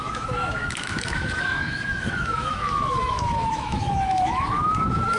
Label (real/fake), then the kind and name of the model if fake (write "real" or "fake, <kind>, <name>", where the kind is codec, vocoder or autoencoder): fake, autoencoder, DAC-VAE